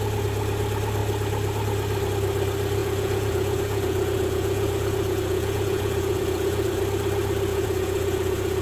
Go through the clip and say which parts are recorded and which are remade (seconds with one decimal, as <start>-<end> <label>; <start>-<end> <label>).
0.0-2.8 recorded; 2.8-6.8 remade; 6.8-7.5 recorded; 7.5-8.6 remade